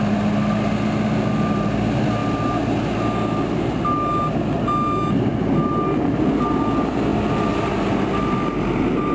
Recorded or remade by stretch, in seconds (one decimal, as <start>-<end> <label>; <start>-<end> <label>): 0.0-9.1 recorded